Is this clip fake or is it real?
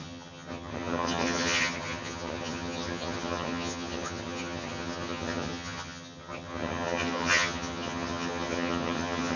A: fake